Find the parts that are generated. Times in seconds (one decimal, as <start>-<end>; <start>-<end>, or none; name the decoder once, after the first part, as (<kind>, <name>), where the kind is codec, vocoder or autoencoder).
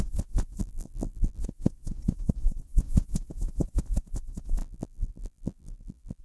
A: 0.6-1.4 (vocoder, BigVGAN v2); 4.6-6.2